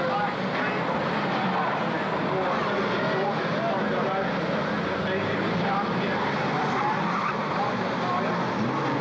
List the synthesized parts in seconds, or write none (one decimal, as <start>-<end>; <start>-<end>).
7.2-8.0